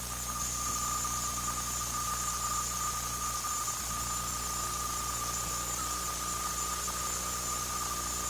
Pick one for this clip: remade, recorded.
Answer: recorded